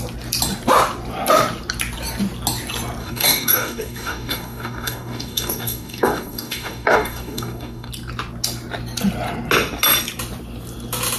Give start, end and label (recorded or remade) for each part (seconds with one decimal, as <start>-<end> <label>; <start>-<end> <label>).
0.0-3.0 recorded; 3.0-7.9 remade; 7.9-11.2 recorded